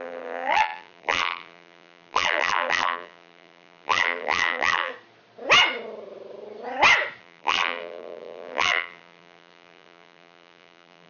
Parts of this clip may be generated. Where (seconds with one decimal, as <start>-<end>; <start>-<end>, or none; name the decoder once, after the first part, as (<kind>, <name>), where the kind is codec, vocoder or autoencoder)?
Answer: 0.0-4.9 (vocoder, BigVGAN v2); 7.2-11.1